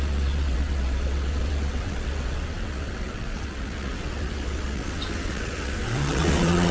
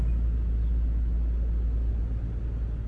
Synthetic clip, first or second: first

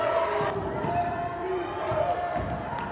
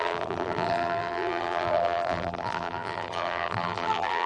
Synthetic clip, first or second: second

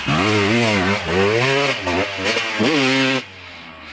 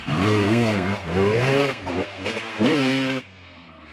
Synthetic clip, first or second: second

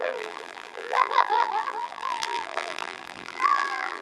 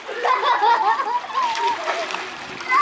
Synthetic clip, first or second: first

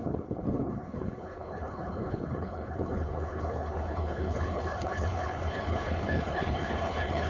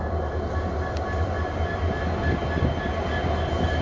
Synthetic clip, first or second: first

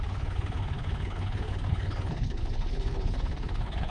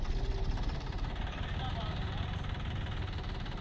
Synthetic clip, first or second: first